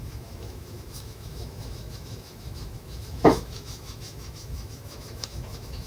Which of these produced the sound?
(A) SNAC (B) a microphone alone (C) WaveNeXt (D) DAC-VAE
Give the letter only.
D